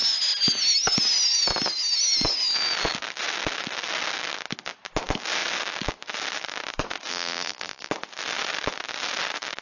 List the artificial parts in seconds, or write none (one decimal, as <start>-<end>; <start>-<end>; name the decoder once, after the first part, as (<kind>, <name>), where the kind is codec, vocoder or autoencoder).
7.1-7.9 (vocoder, BigVGAN v2)